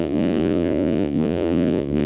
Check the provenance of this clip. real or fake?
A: fake